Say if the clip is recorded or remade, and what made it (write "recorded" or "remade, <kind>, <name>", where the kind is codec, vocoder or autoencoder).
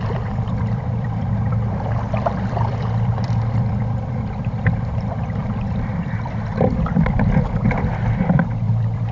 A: remade, vocoder, BigVGAN v2